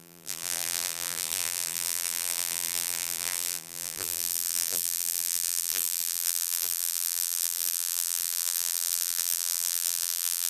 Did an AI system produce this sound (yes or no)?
yes